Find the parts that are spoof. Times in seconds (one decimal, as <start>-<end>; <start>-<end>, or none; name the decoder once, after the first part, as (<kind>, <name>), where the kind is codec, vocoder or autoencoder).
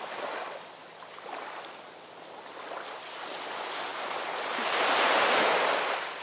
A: none